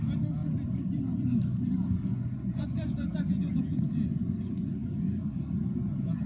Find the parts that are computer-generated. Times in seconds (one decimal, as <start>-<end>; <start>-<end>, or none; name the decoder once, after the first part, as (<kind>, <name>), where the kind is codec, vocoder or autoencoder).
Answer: 2.1-3.7 (vocoder, Vocos); 4.8-6.3